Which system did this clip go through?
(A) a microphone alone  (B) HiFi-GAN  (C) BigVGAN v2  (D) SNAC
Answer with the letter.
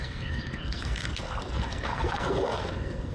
D